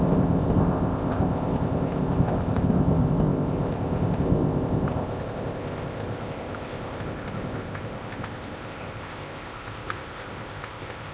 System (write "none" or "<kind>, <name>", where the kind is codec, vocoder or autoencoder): codec, ZipCodec